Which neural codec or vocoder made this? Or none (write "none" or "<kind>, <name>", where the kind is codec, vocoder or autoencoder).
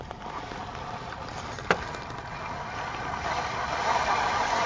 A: none